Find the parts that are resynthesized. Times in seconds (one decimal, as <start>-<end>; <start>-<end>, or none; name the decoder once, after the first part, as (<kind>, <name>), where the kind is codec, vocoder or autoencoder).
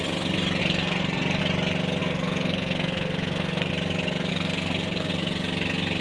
0.6-1.4 (codec, SNAC); 2.0-3.7; 4.3-5.1